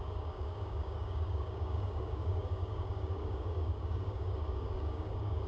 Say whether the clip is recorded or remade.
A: remade